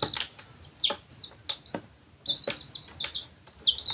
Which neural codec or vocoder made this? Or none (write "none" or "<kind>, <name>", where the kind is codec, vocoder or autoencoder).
none